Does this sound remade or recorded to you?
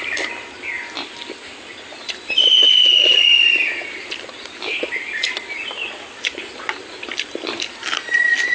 recorded